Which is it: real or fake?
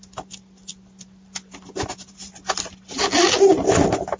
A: real